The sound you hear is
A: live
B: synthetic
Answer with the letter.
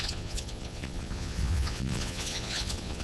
B